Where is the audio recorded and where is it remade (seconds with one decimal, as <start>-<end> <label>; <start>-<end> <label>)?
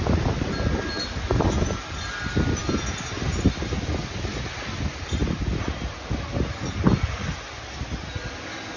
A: 0.0-8.8 recorded